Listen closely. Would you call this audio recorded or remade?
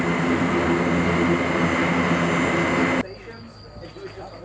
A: recorded